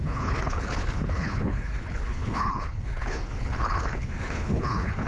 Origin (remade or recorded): remade